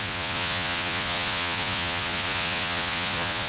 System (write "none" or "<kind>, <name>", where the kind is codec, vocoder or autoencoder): vocoder, Vocos